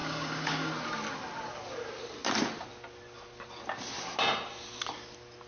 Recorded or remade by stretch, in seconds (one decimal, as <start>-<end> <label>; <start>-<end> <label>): 0.0-0.7 remade; 0.7-5.5 recorded